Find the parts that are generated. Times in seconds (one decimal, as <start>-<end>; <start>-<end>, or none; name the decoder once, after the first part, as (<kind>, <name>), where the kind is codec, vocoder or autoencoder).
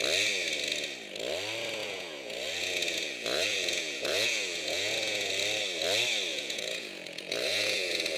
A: 1.8-5.3 (vocoder, Vocos); 6.3-8.2